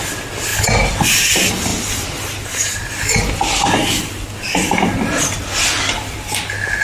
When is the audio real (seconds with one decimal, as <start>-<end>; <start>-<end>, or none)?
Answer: 0.0-6.8

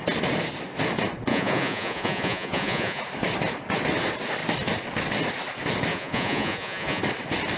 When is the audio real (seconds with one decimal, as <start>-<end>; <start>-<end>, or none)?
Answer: 0.0-1.3; 3.0-5.9; 7.0-7.6

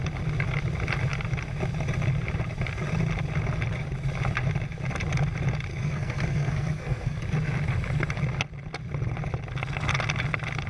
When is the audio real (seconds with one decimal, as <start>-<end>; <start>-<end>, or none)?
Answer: 0.0-5.7; 7.2-10.7

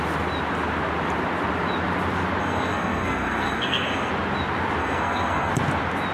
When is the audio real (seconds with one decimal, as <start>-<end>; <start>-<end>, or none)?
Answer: 0.0-2.4; 4.1-4.8; 5.5-6.1

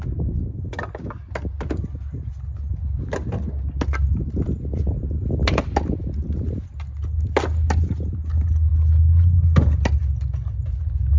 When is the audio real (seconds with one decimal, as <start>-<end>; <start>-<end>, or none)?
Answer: 0.0-11.2

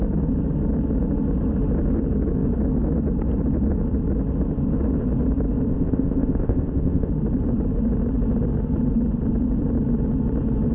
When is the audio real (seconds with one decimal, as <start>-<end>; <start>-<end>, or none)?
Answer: 0.0-5.7; 7.1-10.7

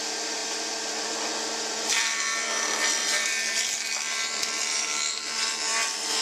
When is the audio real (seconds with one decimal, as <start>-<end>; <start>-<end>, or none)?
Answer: none

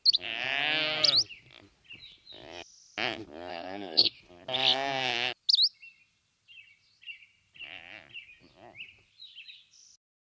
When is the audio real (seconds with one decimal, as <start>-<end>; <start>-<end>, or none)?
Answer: 0.0-3.5; 4.2-10.2